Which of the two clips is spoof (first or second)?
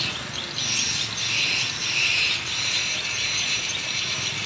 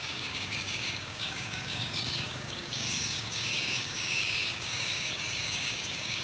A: second